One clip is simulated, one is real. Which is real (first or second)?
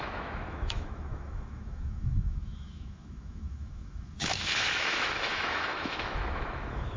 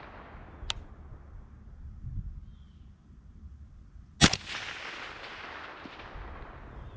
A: second